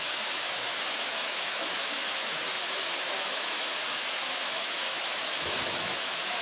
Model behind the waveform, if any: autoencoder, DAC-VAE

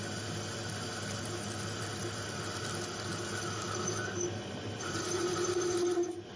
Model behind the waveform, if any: none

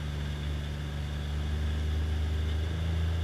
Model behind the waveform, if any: none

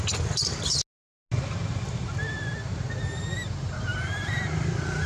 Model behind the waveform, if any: none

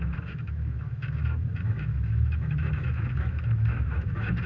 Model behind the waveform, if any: autoencoder, DAC-VAE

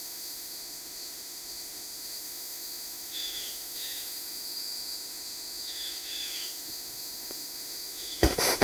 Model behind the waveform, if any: autoencoder, DAC-VAE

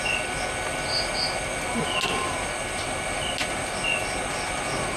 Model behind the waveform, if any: none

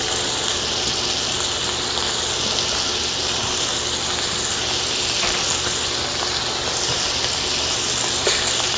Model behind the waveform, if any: none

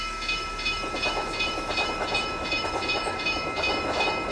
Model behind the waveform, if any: autoencoder, DAC-VAE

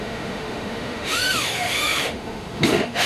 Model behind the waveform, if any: autoencoder, DAC-VAE